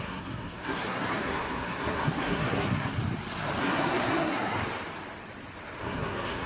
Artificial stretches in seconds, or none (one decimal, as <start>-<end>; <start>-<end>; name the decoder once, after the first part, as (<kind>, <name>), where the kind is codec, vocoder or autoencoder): 0.0-2.9 (codec, SNAC); 3.6-4.6; 5.8-6.5